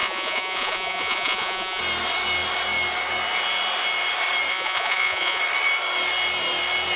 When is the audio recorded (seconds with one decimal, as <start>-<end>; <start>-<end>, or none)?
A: 1.8-4.5; 5.4-7.0